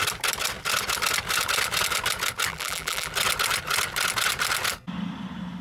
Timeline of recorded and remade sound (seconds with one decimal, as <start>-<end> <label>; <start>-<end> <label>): 0.0-2.5 recorded; 2.5-3.1 remade; 3.1-5.6 recorded